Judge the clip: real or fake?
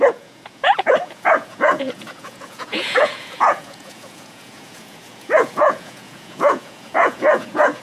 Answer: fake